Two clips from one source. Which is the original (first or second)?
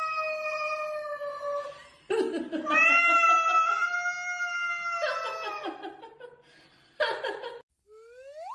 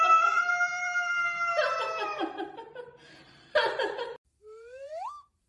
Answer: first